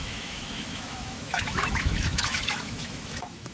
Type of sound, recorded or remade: remade